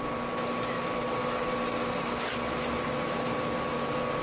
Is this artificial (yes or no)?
no